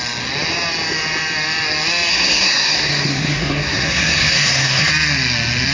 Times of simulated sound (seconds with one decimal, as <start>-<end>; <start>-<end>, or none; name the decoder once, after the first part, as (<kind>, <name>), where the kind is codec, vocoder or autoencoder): 2.1-4.9 (codec, SNAC)